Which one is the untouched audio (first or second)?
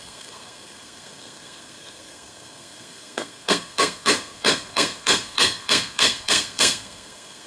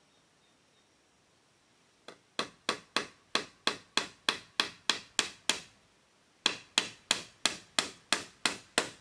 second